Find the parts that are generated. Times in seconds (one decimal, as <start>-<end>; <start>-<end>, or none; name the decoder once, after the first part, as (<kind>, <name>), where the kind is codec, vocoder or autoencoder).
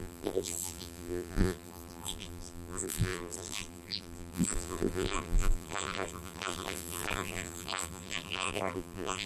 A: 0.0-9.3 (vocoder, BigVGAN v2)